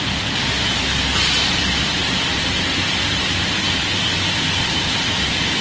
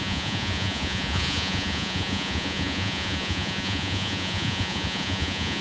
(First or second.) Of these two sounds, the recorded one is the first